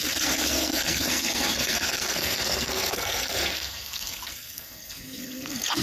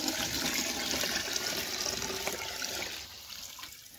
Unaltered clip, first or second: second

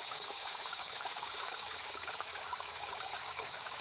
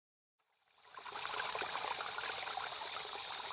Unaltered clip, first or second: second